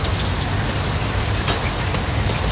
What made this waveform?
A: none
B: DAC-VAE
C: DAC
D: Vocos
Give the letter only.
A